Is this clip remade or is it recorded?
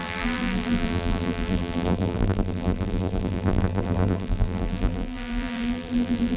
remade